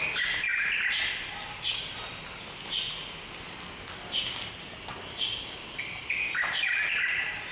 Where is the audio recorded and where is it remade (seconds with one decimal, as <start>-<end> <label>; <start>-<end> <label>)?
0.0-7.5 recorded